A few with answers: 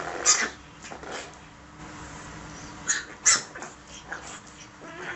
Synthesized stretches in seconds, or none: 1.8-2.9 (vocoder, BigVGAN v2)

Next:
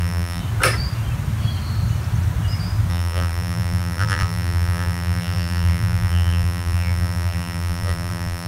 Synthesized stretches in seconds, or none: 0.0-0.4 (vocoder, BigVGAN v2); 2.9-8.5

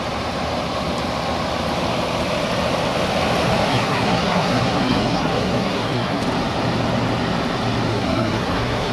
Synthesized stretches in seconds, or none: 3.7-6.2 (codec, SNAC); 7.9-8.9

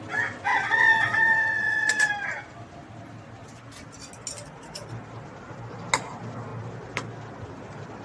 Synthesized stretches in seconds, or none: 0.5-2.1 (vocoder, WaveNeXt)

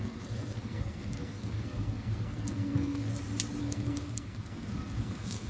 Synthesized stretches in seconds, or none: 0.0-3.1 (codec, SNAC); 3.6-5.5